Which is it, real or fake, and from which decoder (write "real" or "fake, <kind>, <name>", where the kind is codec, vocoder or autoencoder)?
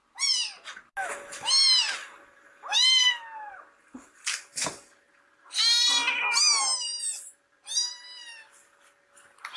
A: real